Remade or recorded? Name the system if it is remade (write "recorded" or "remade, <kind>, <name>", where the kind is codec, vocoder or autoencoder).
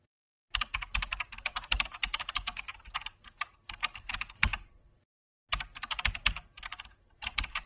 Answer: recorded